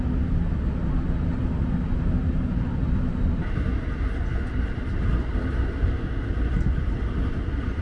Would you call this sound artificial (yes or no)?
no